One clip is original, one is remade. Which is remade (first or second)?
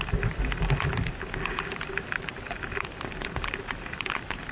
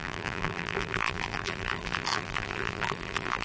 second